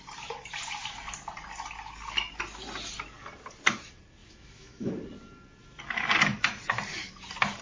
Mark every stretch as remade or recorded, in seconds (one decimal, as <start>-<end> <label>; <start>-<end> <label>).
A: 0.0-4.2 recorded; 4.2-4.9 remade; 4.9-7.6 recorded